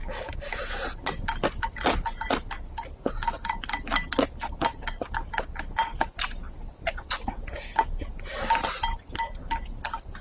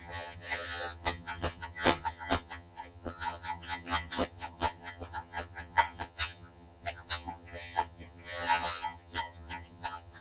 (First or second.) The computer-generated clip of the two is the second